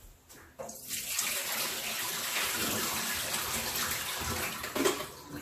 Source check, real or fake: real